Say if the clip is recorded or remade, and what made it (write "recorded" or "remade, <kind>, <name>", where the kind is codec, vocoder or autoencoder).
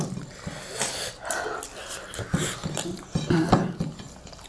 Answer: recorded